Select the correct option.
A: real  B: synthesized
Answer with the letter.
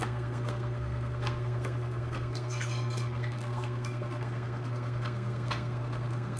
B